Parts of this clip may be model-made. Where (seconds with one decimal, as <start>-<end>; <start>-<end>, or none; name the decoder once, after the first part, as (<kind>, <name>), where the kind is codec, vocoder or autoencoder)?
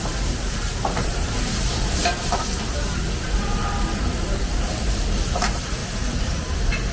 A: 0.0-2.0 (vocoder, BigVGAN v2); 3.2-6.9